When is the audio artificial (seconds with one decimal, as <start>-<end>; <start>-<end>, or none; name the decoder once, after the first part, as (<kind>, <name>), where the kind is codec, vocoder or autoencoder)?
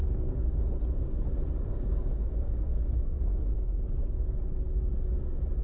0.0-0.6 (codec, SNAC); 2.2-3.8